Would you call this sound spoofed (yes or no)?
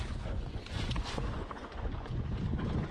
yes